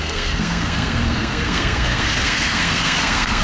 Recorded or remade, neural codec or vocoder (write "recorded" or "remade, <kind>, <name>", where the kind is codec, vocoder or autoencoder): remade, codec, SNAC